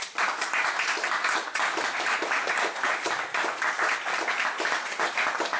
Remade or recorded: recorded